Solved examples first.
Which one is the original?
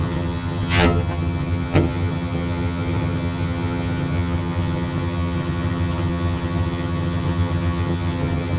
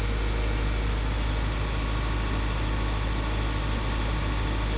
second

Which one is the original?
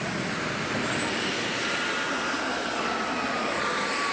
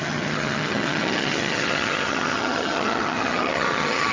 first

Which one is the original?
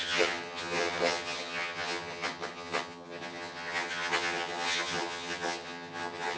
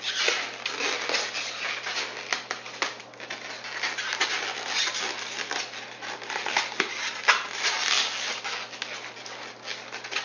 second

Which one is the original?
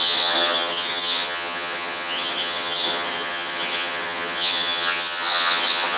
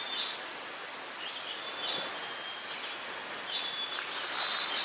second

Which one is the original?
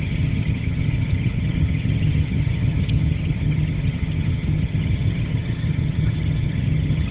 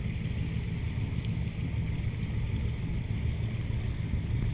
second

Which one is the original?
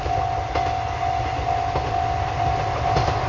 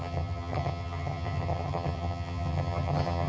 first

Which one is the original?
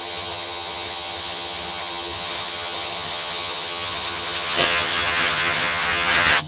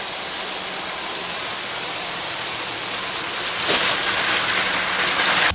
second